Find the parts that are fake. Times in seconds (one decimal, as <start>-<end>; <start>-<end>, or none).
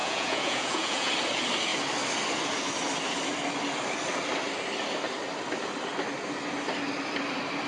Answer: 0.0-1.1